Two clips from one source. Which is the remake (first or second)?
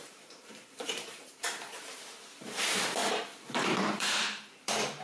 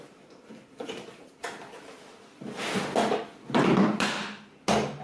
first